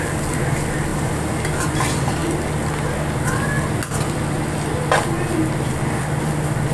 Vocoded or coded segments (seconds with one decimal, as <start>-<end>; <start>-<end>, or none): 0.9-1.4